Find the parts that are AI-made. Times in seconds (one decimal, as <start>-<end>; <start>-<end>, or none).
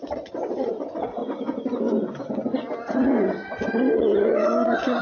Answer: 0.0-1.2; 2.9-3.4; 4.0-5.0